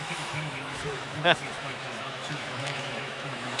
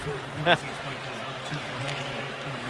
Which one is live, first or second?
second